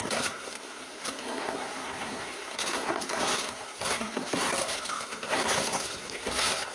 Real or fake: fake